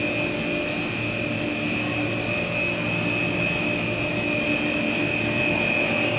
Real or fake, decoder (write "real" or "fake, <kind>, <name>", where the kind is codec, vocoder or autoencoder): real